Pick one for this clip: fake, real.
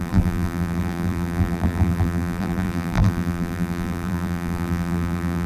fake